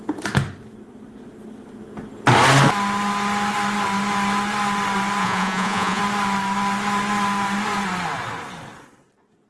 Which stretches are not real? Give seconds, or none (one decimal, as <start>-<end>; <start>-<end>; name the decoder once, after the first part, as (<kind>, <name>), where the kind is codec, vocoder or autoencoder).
5.2-6.0 (vocoder, Vocos)